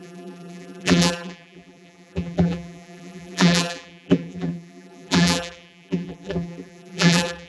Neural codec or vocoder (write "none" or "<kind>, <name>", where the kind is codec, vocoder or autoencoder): vocoder, BigVGAN v2